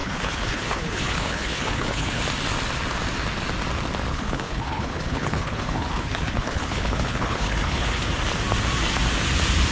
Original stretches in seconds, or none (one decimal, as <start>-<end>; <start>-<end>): 2.2-4.1; 8.0-9.7